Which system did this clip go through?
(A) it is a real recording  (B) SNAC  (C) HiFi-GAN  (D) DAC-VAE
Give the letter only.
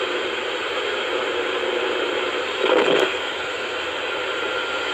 A